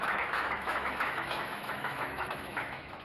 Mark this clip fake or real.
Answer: fake